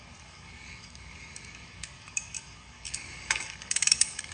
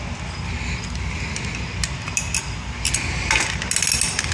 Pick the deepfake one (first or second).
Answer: first